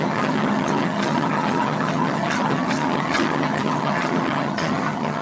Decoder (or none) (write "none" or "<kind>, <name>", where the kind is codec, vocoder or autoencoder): vocoder, HiFi-GAN